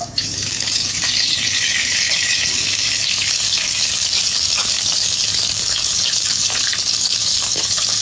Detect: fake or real fake